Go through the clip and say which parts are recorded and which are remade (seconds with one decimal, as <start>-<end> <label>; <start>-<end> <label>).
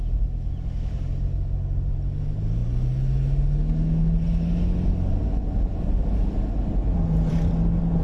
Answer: 0.0-8.0 recorded